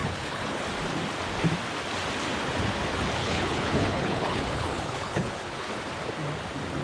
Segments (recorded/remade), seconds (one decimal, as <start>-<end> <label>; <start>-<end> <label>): 0.0-0.6 remade; 0.6-3.2 recorded; 3.2-5.7 remade; 5.7-6.8 recorded